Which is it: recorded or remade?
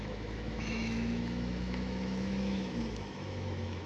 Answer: remade